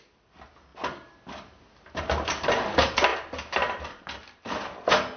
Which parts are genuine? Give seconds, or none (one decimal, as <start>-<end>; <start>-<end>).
0.0-5.2